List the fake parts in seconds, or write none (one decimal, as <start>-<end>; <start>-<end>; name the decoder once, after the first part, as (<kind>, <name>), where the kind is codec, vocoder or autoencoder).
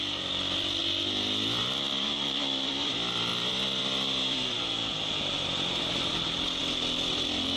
0.0-0.8 (vocoder, BigVGAN v2); 1.6-4.9; 6.6-7.6